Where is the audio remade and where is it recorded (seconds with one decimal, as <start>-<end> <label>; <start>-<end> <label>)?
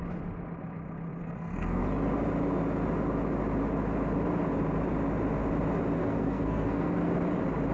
0.0-1.2 recorded; 1.2-1.8 remade; 1.8-6.0 recorded; 6.0-7.1 remade; 7.1-7.7 recorded